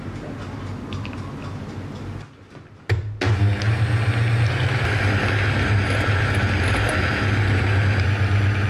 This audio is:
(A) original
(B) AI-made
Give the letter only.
A